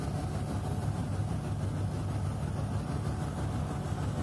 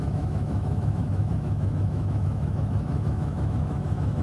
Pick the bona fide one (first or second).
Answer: first